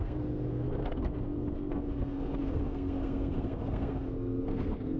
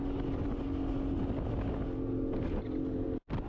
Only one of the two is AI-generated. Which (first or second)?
first